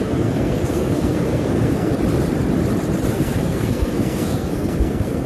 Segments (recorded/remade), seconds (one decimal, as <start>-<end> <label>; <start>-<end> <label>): 0.0-1.9 remade; 1.9-3.1 recorded; 3.1-5.3 remade